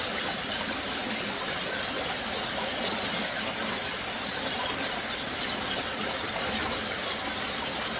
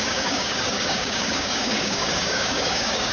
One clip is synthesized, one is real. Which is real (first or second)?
first